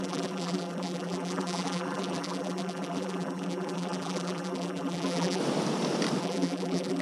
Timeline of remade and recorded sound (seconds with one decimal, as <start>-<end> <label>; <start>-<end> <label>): 0.0-5.4 remade; 5.4-6.2 recorded; 6.2-7.0 remade

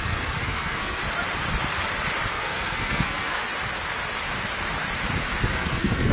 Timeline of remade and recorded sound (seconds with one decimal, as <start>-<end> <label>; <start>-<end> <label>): 0.0-1.0 remade; 1.0-2.3 recorded; 2.3-3.4 remade; 3.4-5.5 recorded; 5.5-6.1 remade

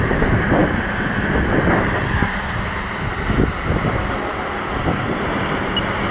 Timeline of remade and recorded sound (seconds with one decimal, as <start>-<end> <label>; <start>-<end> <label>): 0.0-6.1 recorded

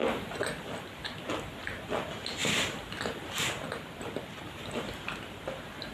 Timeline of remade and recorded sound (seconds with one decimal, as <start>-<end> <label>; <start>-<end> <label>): 0.0-2.4 recorded; 2.4-3.0 remade; 3.0-5.9 recorded